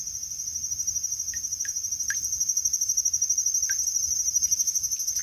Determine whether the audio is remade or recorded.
recorded